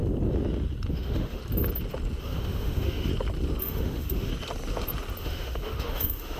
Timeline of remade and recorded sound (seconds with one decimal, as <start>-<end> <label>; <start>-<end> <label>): 0.0-0.9 recorded; 0.9-1.4 remade; 1.4-2.2 recorded; 2.2-3.1 remade; 3.1-3.6 recorded; 3.6-4.3 remade; 4.3-5.2 recorded; 5.2-6.4 remade